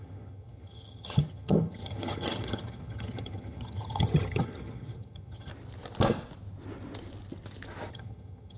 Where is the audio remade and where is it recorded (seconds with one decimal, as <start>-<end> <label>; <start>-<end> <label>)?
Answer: 0.0-5.5 remade; 5.5-7.9 recorded; 7.9-8.6 remade